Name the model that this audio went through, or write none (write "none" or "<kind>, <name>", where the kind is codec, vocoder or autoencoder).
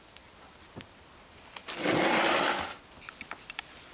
none